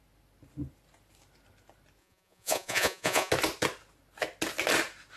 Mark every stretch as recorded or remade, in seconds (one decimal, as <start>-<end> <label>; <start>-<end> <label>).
0.0-2.0 recorded; 2.0-3.3 remade; 3.3-5.2 recorded